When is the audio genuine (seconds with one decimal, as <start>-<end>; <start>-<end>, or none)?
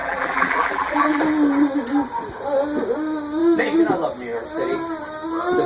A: 1.2-5.7